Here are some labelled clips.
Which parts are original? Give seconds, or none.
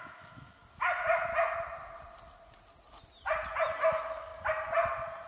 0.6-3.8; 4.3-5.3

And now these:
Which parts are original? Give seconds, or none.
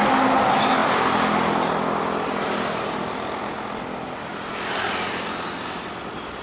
0.0-6.4